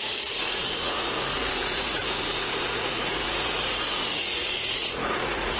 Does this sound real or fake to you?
fake